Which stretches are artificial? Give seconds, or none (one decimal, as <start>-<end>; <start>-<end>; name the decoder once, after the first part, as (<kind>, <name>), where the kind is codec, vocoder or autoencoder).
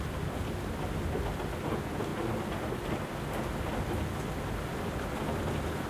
none